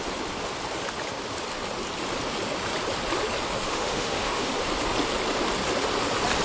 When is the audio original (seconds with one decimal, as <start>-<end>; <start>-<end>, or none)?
0.0-3.7; 4.5-6.4